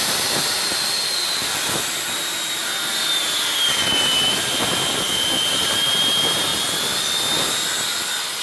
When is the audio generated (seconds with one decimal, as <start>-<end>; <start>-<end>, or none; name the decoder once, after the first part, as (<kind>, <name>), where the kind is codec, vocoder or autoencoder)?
0.0-6.5 (vocoder, BigVGAN v2)